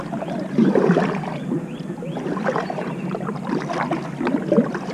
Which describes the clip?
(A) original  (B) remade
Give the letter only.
A